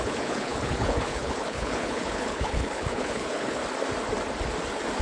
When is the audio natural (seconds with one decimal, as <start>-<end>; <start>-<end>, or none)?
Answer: 3.6-5.0